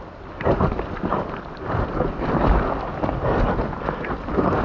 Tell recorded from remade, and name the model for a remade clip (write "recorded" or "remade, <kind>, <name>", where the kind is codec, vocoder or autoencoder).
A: recorded